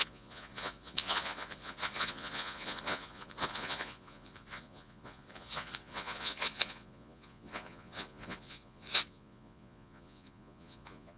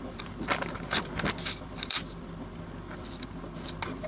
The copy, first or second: first